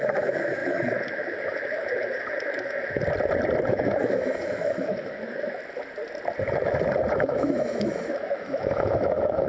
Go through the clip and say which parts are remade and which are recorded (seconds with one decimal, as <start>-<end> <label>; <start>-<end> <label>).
0.0-3.0 remade; 3.0-3.7 recorded; 3.7-5.6 remade; 5.6-7.1 recorded; 7.1-9.5 remade